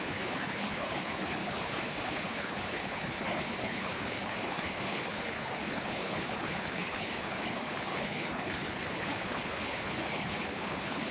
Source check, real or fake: fake